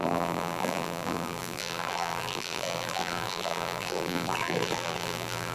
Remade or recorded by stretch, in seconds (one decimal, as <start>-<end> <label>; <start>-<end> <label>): 0.0-5.5 remade

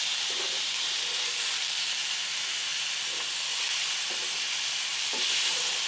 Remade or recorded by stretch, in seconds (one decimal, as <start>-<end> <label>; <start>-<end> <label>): 0.0-2.7 recorded; 2.7-3.6 remade; 3.6-4.9 recorded; 4.9-5.5 remade; 5.5-5.9 recorded

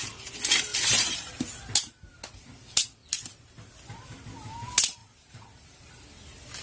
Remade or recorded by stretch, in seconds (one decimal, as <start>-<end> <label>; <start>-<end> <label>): 0.0-0.7 recorded; 0.7-1.4 remade; 1.4-3.0 recorded; 3.0-3.7 remade; 3.7-5.0 recorded; 5.0-5.9 remade; 5.9-6.6 recorded

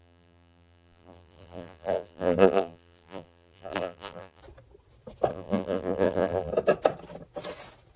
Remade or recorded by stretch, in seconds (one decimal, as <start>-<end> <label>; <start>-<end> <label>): 0.0-4.4 remade; 4.4-5.3 recorded; 5.3-6.5 remade; 6.5-8.0 recorded